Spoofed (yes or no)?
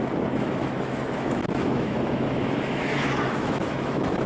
yes